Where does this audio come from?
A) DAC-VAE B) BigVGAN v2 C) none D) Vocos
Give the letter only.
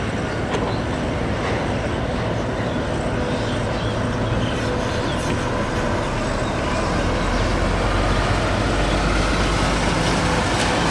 C